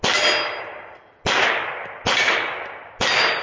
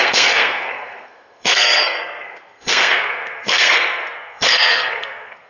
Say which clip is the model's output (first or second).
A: second